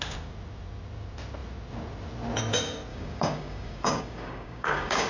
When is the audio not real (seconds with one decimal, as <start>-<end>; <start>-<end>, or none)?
2.9-5.1

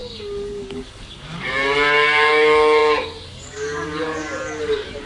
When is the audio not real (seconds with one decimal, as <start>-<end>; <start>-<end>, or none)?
0.0-5.1

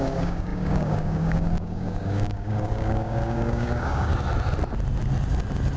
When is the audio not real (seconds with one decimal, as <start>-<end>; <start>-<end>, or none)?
0.0-4.1

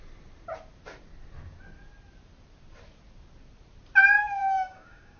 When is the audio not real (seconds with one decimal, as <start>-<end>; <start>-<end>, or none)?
4.2-5.2

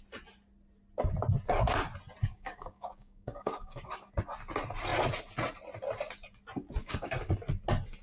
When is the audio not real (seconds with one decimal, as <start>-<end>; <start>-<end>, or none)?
2.3-4.1; 6.8-7.3

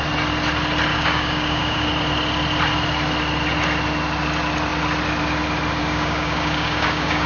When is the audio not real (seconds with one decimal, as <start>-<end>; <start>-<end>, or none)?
0.9-1.9; 5.8-7.3

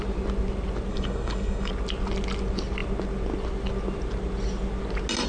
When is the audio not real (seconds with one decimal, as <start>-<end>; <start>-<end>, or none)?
0.9-1.7

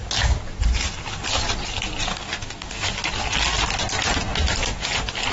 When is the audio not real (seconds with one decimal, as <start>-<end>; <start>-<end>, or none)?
2.1-2.9